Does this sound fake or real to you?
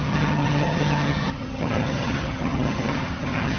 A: fake